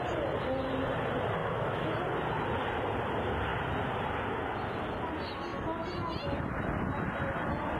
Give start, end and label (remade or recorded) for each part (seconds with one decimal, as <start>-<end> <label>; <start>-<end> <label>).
0.0-1.4 recorded; 1.4-1.9 remade; 1.9-7.8 recorded